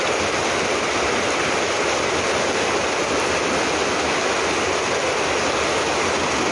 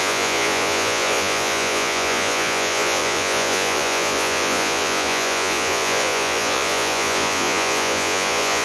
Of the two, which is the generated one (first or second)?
second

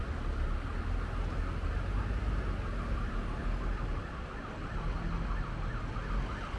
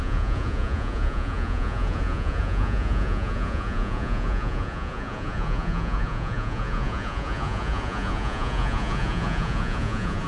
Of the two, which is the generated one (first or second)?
second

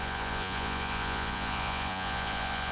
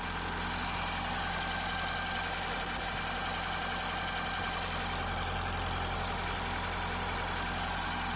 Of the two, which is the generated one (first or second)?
first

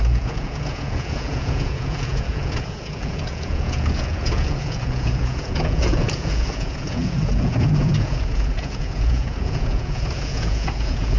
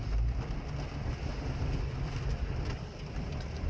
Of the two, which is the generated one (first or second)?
first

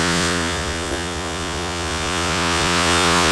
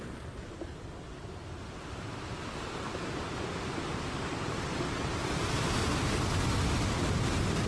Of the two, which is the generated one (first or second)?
first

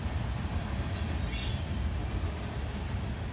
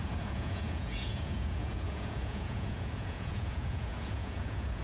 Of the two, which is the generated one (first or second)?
second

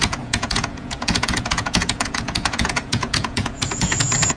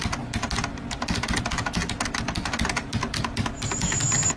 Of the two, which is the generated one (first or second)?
first